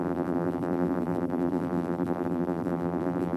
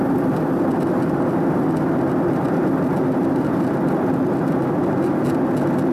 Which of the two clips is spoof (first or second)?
first